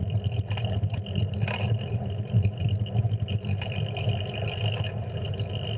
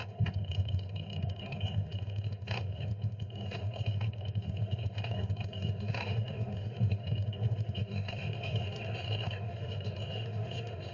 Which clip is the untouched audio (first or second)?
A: first